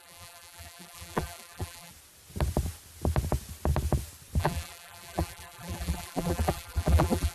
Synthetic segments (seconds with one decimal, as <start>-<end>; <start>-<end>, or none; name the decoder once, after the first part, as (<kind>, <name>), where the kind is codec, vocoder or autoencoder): 0.0-1.9 (vocoder, BigVGAN v2); 4.4-7.3